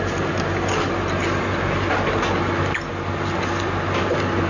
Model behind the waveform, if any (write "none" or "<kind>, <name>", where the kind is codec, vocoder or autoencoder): none